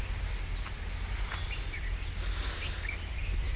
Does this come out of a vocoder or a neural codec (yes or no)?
no